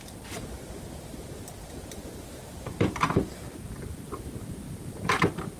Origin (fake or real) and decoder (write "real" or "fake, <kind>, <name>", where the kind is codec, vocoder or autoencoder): fake, vocoder, BigVGAN v2